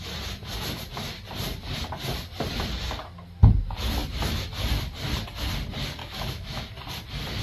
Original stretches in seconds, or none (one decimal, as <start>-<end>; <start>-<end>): 0.0-6.0; 6.6-7.4